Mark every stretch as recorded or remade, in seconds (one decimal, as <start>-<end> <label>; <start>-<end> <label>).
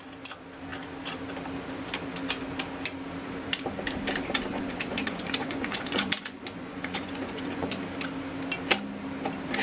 0.0-4.5 recorded; 4.5-7.8 remade; 7.8-9.6 recorded